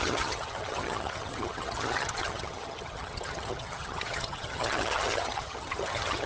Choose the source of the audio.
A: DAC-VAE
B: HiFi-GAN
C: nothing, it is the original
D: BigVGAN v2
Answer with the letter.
B